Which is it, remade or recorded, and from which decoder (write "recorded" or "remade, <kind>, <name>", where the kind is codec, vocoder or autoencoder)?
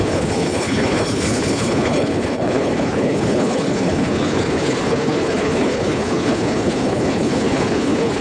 remade, codec, HILCodec